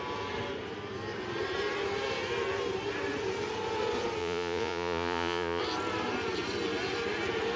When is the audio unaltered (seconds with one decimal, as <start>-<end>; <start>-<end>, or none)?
0.0-4.2; 5.6-7.6